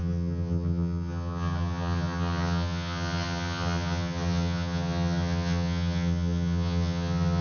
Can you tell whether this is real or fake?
fake